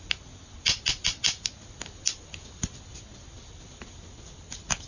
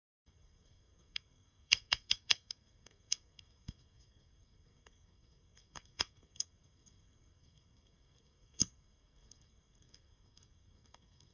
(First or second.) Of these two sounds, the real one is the first